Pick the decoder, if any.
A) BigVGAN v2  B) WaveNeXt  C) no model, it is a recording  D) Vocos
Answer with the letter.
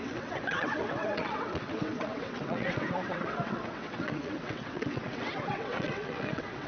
B